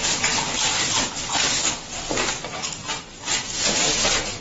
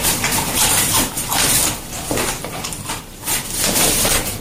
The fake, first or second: second